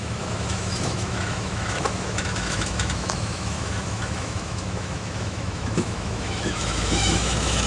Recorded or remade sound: remade